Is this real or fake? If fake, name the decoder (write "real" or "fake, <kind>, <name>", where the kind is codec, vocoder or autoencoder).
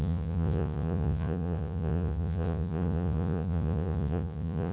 fake, vocoder, Vocos